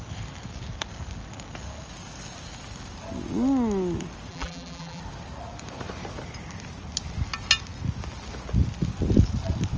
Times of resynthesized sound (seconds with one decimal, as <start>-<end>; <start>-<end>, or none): 4.3-5.0